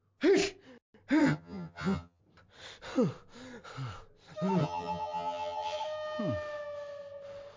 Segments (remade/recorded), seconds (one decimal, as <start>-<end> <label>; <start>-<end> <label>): 0.0-1.2 recorded; 1.2-2.2 remade; 2.2-4.6 recorded; 4.6-5.8 remade; 5.8-7.6 recorded